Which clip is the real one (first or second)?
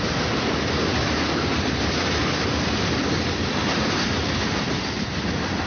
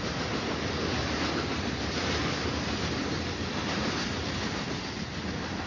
second